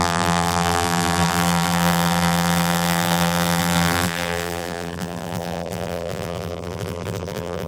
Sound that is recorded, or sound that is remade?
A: remade